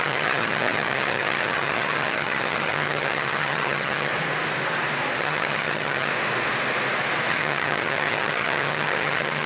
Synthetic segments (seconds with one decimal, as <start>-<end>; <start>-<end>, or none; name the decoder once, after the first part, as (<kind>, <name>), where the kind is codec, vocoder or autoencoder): 0.0-4.1 (vocoder, HiFi-GAN); 5.2-6.1; 7.3-9.5